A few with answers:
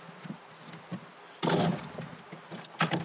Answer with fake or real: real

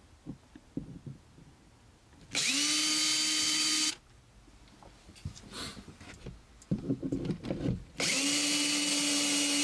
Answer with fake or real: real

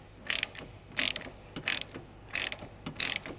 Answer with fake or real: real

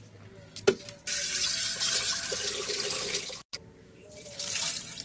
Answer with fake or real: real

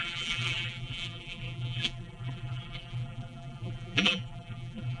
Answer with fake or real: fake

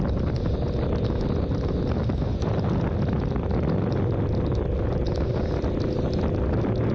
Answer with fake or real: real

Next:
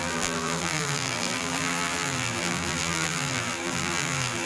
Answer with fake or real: fake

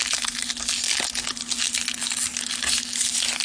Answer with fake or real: real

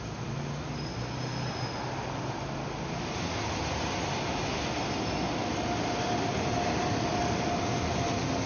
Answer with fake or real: real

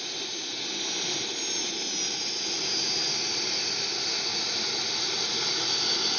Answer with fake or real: real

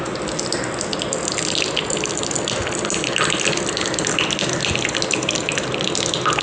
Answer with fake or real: real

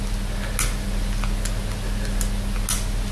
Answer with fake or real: real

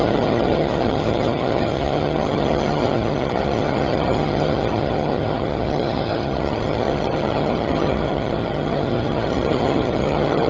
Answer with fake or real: fake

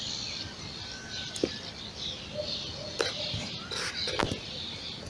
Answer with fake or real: real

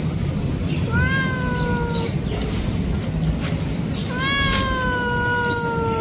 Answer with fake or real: real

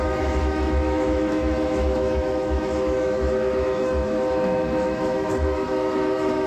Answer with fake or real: fake